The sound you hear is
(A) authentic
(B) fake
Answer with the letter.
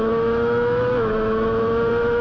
B